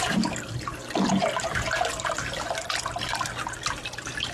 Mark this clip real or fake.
real